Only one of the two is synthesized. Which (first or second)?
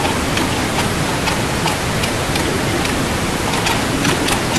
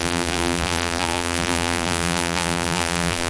second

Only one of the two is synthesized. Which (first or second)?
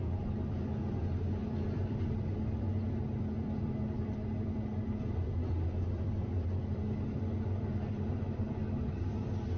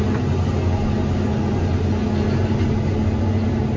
first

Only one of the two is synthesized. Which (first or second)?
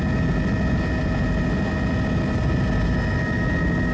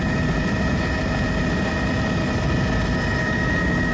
second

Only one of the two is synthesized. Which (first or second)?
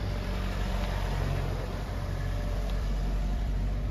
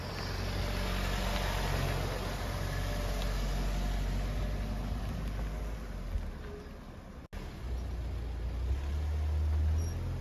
first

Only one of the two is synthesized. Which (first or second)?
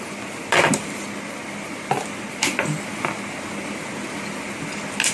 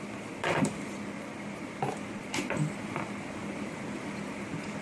second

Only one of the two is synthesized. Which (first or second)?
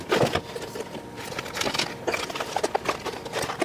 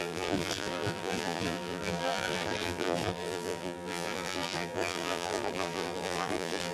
second